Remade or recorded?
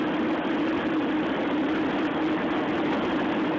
recorded